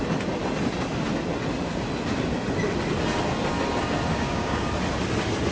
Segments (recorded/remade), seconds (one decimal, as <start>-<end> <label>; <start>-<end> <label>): 0.0-4.1 recorded; 4.1-4.7 remade; 4.7-5.5 recorded